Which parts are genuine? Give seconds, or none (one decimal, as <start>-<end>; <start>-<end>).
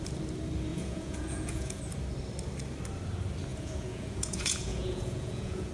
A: 0.0-0.7; 1.8-3.5